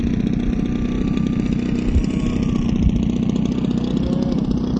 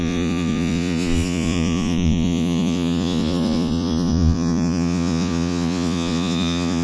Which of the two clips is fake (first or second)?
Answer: second